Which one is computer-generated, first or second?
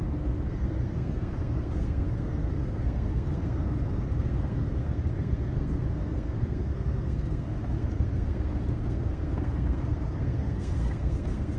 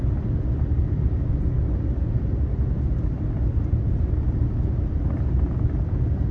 first